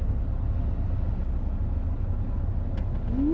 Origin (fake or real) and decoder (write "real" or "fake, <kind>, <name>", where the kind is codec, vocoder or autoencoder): real